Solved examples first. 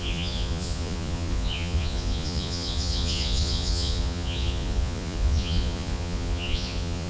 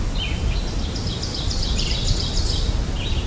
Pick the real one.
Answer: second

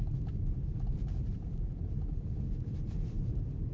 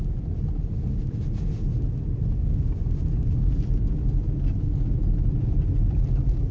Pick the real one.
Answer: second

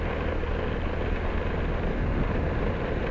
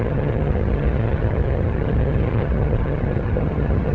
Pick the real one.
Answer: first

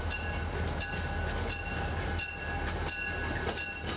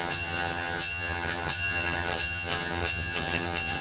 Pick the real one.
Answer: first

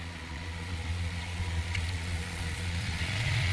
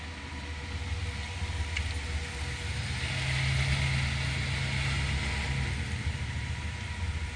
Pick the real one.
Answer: second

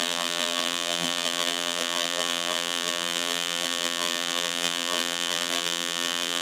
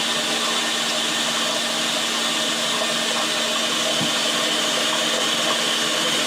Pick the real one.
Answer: second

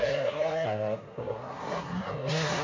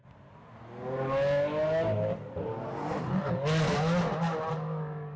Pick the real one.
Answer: second